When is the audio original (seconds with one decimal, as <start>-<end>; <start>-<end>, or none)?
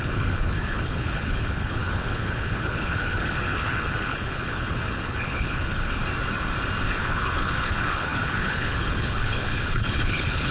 6.0-6.9